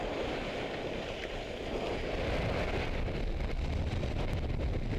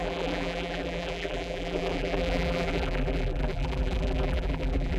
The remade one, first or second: second